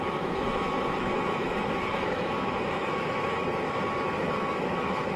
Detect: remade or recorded remade